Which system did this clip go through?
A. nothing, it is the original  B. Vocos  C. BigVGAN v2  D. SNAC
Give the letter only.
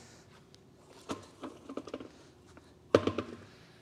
A